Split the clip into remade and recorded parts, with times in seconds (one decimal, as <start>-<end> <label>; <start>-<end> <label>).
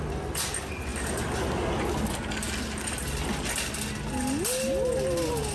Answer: 0.0-5.5 recorded